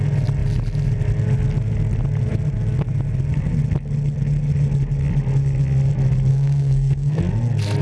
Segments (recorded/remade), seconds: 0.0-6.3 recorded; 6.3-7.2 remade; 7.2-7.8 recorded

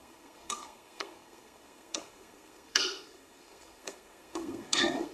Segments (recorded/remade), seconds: 0.0-5.1 remade

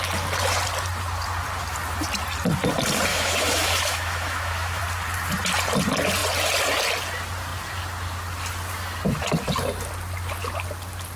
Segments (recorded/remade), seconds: 0.0-3.1 recorded; 3.1-4.8 remade; 4.8-11.2 recorded

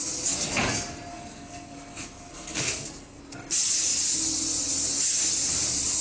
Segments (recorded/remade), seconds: 0.0-1.1 recorded; 1.1-3.2 remade; 3.2-6.0 recorded

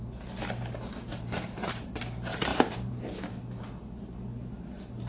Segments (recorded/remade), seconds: 0.0-1.1 recorded; 1.1-2.0 remade; 2.0-2.5 recorded; 2.5-3.1 remade; 3.1-5.1 recorded

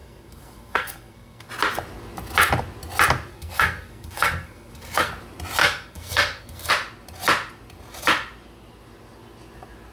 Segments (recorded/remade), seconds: 0.0-1.5 remade; 1.5-3.3 recorded; 3.3-5.1 remade; 5.1-5.6 recorded; 5.6-6.7 remade; 6.7-9.9 recorded

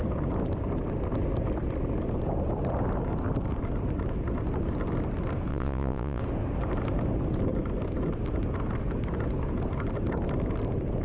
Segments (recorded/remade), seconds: 0.0-5.5 recorded; 5.5-6.2 remade; 6.2-11.0 recorded

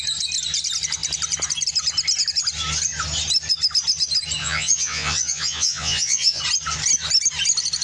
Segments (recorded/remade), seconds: 0.0-4.4 recorded; 4.4-6.4 remade; 6.4-7.8 recorded